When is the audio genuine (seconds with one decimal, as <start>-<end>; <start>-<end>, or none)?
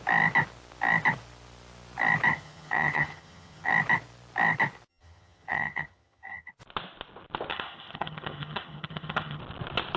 0.0-2.3; 3.7-4.9; 6.5-7.5; 9.4-10.0